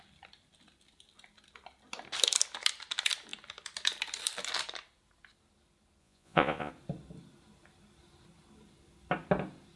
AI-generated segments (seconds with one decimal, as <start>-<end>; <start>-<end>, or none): 6.0-6.7